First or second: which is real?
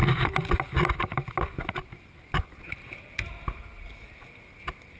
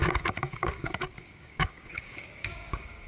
first